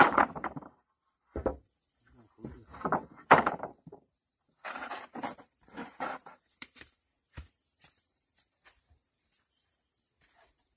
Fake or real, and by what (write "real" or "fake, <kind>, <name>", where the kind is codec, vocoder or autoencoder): fake, vocoder, BigVGAN v2